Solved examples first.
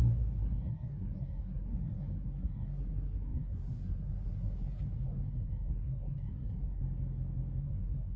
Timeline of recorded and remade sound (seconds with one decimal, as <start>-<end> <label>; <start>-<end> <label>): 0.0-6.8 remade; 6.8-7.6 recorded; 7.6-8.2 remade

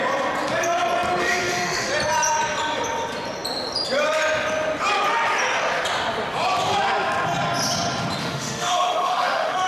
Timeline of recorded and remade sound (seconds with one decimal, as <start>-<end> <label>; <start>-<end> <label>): 0.0-1.2 recorded; 1.2-1.9 remade; 1.9-8.2 recorded; 8.2-9.7 remade

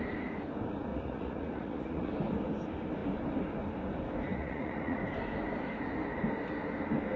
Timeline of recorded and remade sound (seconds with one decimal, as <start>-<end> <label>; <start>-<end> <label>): 0.0-0.9 recorded; 0.9-2.1 remade; 2.1-4.3 recorded; 4.3-5.0 remade; 5.0-7.2 recorded

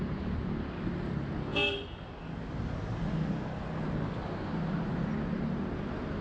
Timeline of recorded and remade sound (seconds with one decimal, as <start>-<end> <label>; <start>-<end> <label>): 0.0-6.2 recorded